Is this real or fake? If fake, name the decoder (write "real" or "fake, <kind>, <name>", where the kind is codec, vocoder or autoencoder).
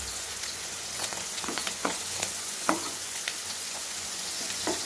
fake, vocoder, Vocos